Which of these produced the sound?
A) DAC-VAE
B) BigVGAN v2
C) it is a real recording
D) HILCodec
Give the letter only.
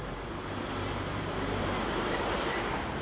B